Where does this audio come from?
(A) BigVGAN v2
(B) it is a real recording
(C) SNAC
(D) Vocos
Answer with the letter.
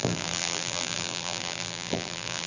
A